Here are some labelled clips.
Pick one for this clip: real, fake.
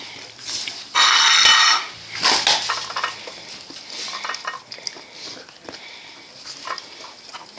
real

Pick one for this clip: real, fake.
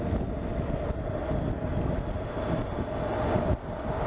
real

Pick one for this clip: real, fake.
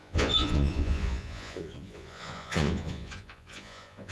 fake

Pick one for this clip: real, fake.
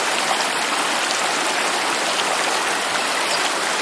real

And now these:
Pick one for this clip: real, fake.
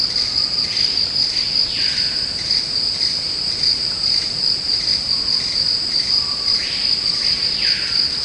fake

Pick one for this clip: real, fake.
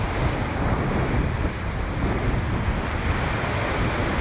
real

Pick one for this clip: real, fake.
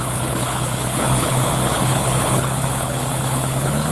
fake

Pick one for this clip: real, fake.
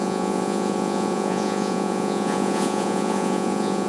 fake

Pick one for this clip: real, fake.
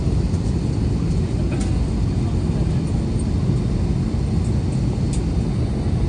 real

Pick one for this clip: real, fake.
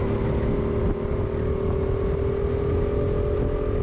real